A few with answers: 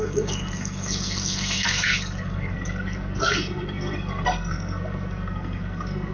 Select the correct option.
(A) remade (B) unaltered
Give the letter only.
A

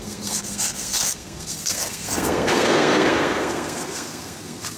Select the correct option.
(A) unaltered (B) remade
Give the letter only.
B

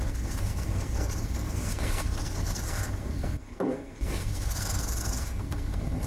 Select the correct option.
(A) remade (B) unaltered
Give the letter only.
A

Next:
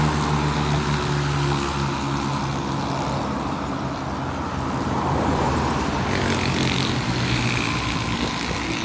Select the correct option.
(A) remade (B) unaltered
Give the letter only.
B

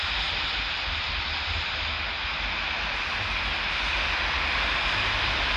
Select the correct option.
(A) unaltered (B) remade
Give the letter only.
A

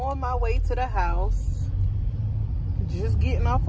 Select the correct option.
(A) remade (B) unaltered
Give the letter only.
B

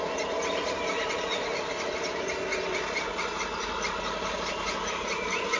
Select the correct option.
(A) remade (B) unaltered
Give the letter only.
B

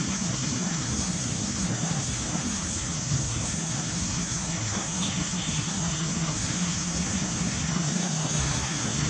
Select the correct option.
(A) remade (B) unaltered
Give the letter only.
A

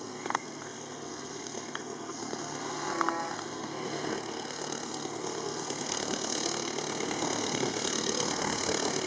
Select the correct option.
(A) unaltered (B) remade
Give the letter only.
B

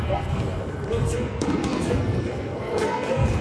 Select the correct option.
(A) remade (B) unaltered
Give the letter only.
A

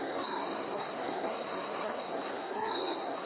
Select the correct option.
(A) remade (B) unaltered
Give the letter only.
A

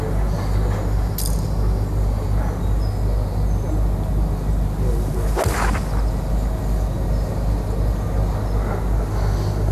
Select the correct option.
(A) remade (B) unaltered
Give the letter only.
B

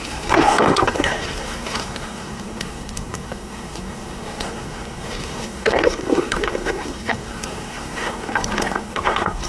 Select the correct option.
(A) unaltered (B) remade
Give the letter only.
B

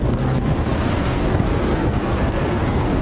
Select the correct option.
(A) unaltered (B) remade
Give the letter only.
B